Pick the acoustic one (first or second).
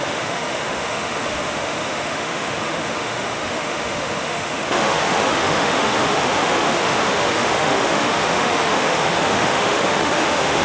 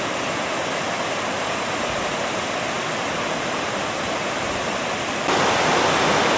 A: second